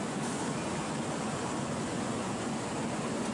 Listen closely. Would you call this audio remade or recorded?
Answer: remade